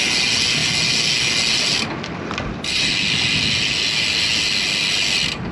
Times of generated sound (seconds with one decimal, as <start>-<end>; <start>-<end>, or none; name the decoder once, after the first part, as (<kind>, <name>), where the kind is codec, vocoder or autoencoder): none